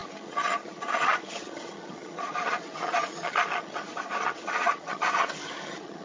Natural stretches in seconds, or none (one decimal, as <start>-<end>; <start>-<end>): none